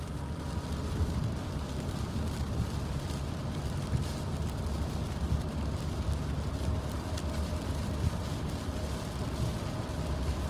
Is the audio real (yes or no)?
yes